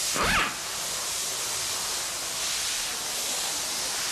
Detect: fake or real real